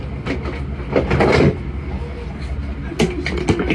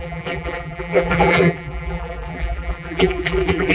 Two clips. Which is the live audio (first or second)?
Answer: first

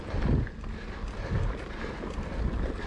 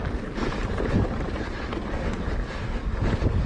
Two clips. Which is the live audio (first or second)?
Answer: first